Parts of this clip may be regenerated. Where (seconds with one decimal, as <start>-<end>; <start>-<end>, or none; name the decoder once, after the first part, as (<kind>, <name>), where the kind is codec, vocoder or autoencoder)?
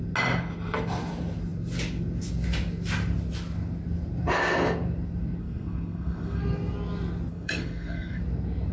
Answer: 5.4-6.4 (codec, SNAC); 7.3-8.2